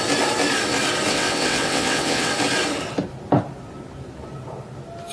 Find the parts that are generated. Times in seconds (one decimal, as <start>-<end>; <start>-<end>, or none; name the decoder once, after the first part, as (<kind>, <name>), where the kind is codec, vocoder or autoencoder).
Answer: 1.1-2.3 (vocoder, WaveNeXt)

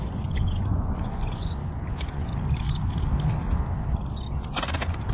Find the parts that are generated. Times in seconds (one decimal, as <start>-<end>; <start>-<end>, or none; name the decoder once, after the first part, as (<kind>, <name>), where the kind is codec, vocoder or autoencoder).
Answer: 0.0-2.3 (vocoder, Vocos)

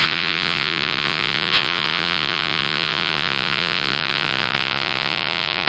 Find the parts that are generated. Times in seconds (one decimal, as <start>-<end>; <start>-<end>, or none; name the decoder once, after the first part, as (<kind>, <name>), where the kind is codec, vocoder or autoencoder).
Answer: 0.0-5.7 (vocoder, Vocos)

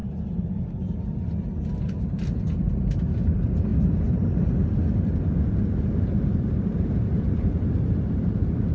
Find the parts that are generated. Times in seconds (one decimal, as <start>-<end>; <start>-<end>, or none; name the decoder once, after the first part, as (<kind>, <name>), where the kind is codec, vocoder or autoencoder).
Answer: 1.8-8.7 (vocoder, BigVGAN v2)

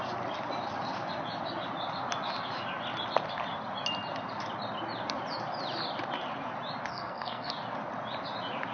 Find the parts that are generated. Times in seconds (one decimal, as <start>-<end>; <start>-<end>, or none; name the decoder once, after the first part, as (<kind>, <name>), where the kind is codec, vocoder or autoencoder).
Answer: 6.9-7.5 (codec, SNAC)